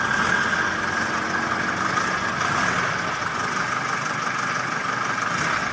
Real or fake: real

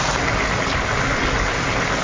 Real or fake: real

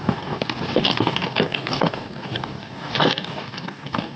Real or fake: fake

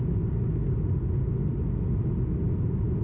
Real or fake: real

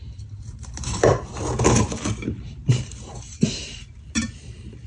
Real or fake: fake